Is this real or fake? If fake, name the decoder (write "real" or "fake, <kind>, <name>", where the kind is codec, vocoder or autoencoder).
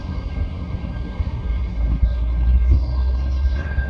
fake, codec, SNAC